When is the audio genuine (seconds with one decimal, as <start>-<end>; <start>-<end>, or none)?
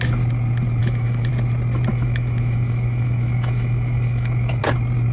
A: 0.0-0.8; 1.3-1.9; 4.6-5.1